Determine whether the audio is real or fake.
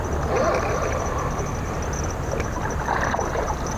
real